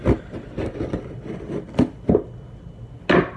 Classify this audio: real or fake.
real